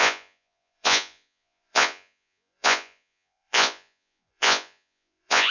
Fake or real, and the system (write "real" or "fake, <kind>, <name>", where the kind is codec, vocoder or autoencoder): fake, vocoder, Vocos